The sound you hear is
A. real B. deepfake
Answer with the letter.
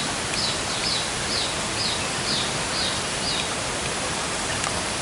A